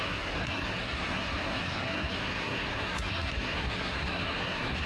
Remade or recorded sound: remade